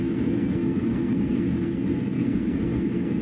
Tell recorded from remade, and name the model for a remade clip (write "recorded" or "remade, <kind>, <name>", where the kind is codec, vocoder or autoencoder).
remade, codec, SNAC